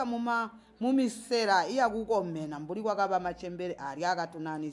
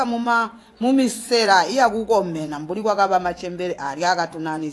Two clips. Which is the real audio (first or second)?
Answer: first